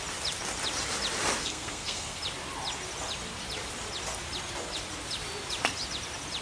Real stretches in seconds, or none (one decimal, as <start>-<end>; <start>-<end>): 0.0-1.4; 2.2-6.4